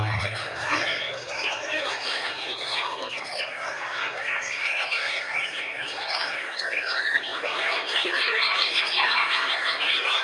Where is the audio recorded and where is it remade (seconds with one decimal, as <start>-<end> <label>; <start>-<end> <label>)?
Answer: 0.0-10.2 remade